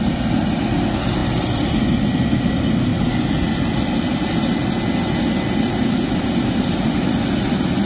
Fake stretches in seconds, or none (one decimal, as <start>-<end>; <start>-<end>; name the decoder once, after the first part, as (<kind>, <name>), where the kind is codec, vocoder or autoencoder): none